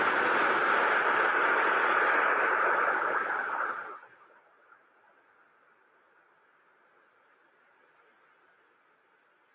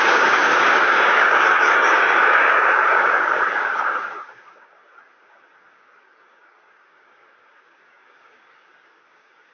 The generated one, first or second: second